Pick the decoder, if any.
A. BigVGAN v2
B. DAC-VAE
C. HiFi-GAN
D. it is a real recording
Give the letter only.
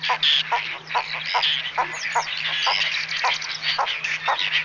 D